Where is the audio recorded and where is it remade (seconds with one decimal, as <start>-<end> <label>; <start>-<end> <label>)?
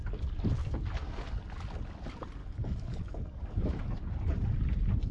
0.0-0.6 recorded; 0.6-1.2 remade; 1.2-2.4 recorded; 2.4-4.1 remade; 4.1-5.1 recorded